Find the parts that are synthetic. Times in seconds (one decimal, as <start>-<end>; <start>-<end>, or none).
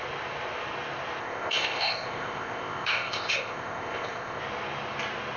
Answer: 1.2-4.4